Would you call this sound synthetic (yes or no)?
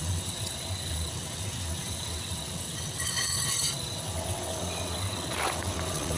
yes